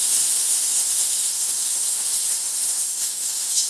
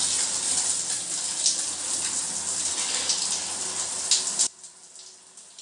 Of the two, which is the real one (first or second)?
second